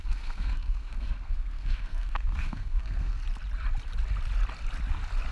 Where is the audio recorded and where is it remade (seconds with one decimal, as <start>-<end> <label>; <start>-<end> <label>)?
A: 0.0-3.2 remade; 3.2-5.3 recorded